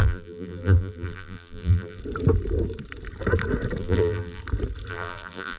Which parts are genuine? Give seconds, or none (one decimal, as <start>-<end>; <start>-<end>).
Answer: 2.0-3.8; 4.4-4.9

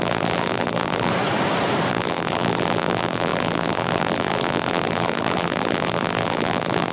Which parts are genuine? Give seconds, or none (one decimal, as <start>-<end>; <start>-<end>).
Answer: 1.1-1.9

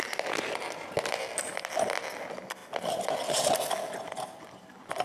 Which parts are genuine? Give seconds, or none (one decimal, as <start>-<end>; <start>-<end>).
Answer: 0.0-5.0